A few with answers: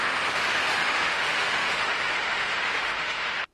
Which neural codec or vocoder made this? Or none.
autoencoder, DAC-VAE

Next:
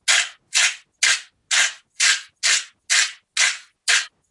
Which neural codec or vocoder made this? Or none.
none